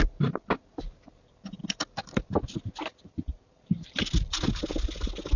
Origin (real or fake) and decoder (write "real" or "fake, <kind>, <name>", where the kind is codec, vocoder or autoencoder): real